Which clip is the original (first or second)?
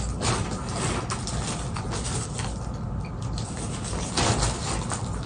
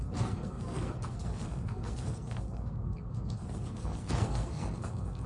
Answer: first